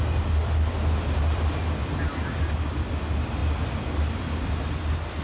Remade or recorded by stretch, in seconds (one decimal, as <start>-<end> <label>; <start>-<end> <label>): 0.0-5.2 recorded